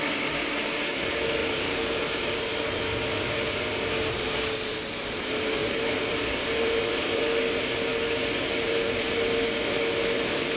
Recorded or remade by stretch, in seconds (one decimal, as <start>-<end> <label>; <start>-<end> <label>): 0.0-1.4 recorded; 1.4-2.5 remade; 2.5-5.6 recorded; 5.6-6.3 remade; 6.3-10.6 recorded